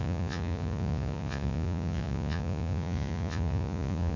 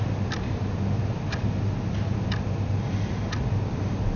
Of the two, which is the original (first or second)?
second